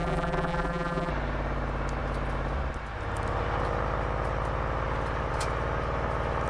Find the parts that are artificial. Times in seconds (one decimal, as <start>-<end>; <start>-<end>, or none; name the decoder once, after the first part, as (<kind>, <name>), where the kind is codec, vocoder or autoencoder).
0.0-1.1 (vocoder, BigVGAN v2)